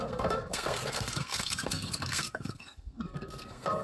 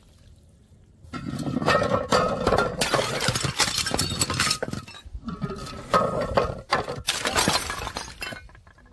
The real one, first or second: second